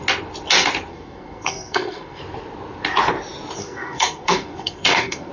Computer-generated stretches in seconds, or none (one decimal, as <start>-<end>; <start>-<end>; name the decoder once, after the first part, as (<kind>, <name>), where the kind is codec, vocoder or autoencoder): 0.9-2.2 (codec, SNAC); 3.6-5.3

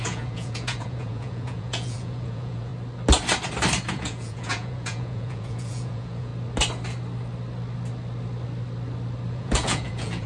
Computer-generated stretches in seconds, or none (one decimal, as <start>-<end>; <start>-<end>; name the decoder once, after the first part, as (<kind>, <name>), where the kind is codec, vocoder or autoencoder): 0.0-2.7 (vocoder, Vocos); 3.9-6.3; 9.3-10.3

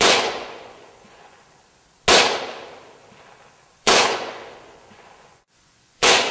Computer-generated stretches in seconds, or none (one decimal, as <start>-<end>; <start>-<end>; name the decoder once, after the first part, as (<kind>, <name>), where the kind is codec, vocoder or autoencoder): 0.0-1.6 (vocoder, Vocos); 3.7-6.3

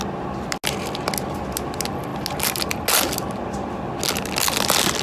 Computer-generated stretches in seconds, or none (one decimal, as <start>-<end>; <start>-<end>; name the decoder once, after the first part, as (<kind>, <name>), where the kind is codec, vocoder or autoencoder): none

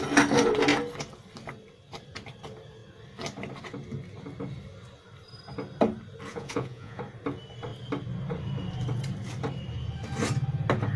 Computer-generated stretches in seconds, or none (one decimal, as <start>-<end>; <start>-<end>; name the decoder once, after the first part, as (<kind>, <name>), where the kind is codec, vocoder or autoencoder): 6.3-7.0 (vocoder, Vocos)

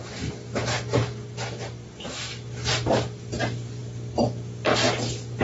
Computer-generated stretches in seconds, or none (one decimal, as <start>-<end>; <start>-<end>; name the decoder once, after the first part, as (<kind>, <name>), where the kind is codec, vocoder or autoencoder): none

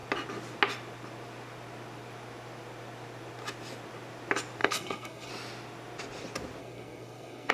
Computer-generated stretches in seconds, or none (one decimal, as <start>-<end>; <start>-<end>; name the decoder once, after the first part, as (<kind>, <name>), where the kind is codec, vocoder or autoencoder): 4.6-5.3 (codec, SNAC); 6.6-7.5